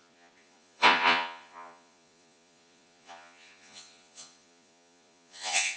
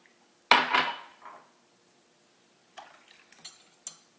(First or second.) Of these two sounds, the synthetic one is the first